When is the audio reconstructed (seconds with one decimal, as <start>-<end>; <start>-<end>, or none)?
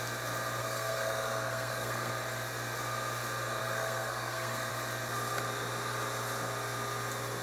0.6-2.1; 3.6-4.7